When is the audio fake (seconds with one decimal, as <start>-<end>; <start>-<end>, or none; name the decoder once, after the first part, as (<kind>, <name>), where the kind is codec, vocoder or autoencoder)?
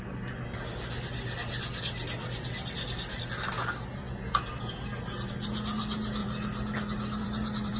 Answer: 4.0-4.6 (vocoder, BigVGAN v2); 6.2-7.8